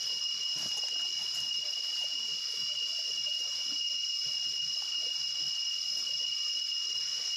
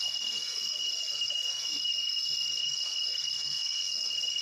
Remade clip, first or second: second